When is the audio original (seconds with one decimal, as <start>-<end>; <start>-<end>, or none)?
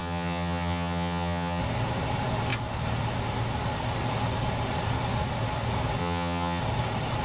1.6-6.0; 6.6-7.2